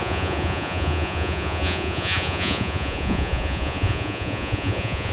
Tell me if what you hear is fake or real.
fake